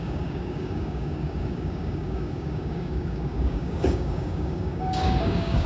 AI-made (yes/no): yes